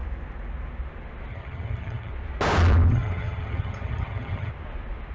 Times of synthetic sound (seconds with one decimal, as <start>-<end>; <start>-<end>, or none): 1.3-2.1; 2.9-4.5